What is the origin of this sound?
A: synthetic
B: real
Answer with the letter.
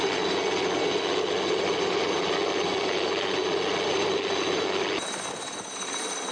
B